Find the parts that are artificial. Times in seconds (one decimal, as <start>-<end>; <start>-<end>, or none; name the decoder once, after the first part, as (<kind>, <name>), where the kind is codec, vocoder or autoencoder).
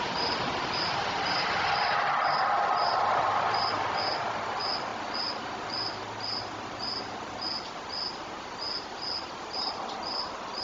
4.9-6.0 (vocoder, BigVGAN v2)